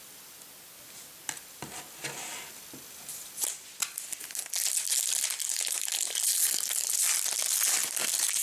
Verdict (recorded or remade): recorded